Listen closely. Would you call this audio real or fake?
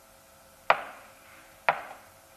real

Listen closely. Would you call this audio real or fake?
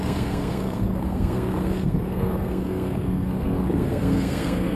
fake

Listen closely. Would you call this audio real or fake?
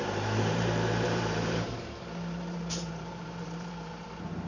fake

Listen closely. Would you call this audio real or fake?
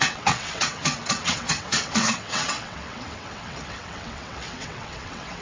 fake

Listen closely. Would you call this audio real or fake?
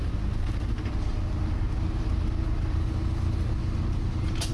real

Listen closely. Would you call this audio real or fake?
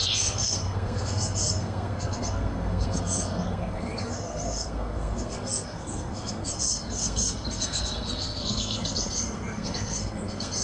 fake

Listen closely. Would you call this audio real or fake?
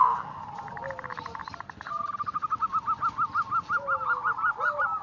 real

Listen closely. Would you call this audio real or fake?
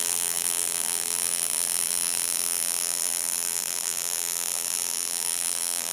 fake